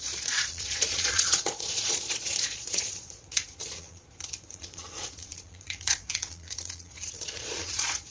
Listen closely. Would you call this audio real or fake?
fake